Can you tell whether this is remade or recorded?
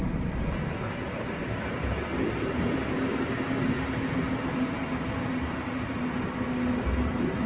recorded